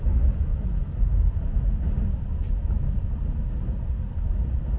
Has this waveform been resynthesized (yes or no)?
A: no